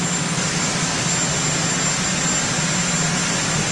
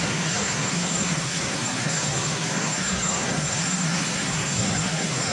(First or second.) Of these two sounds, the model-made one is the second